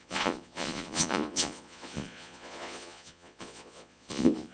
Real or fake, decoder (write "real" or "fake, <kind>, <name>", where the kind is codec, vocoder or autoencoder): fake, vocoder, Vocos